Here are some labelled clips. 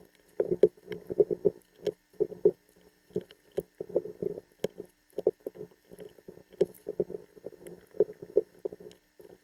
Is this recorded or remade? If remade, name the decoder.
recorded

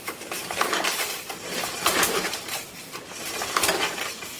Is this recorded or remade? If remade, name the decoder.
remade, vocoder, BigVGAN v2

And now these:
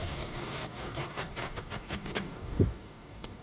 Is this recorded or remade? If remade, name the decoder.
remade, codec, DAC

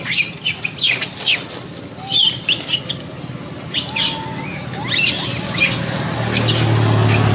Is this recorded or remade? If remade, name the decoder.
recorded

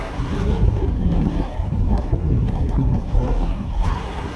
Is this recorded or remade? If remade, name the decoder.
remade, codec, SNAC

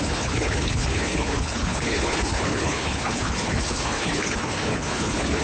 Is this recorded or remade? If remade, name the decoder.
remade, codec, HILCodec